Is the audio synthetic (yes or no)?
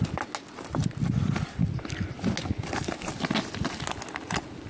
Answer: no